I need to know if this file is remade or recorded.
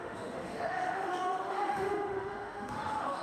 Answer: remade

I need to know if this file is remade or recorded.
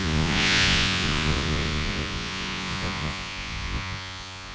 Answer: remade